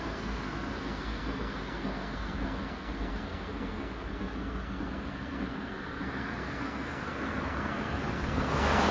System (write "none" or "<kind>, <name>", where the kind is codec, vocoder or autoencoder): codec, SNAC